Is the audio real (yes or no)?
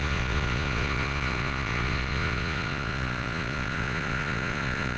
no